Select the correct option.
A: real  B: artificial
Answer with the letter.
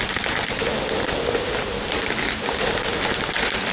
A